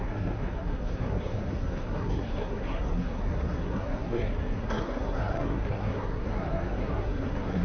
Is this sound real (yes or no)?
no